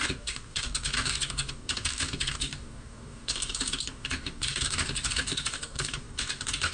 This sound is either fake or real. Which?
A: fake